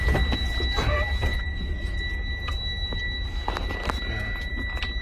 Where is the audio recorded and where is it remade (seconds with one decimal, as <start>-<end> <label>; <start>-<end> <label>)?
0.0-1.3 recorded; 1.3-2.0 remade; 2.0-5.0 recorded